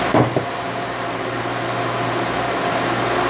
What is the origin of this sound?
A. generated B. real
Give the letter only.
B